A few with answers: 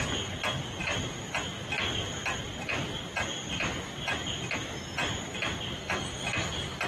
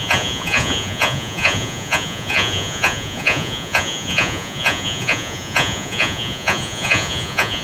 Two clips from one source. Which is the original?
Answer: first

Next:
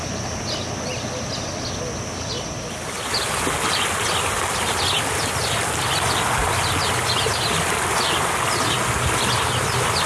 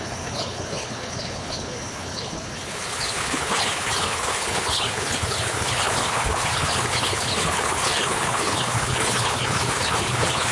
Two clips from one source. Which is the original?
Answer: first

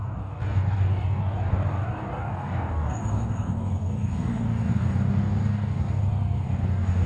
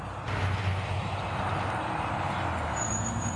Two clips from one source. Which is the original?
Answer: second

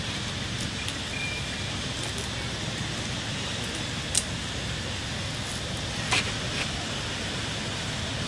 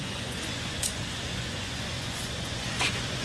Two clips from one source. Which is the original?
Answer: first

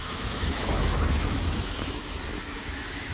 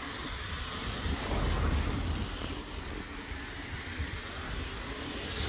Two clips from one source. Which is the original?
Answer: second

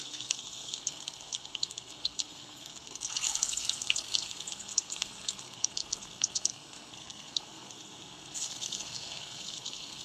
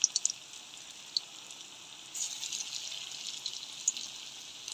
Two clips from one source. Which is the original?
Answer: second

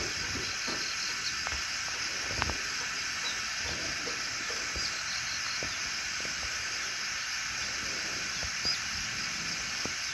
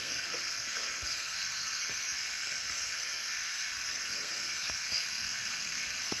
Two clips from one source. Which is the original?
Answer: first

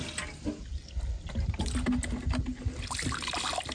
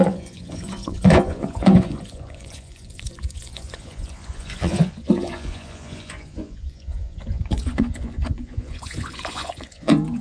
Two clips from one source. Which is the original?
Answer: first